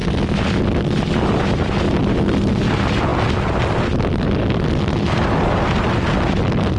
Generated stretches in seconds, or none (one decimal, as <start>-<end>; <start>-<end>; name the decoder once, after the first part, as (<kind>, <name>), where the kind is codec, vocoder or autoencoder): none